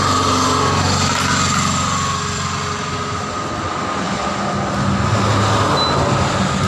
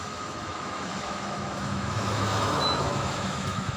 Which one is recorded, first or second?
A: first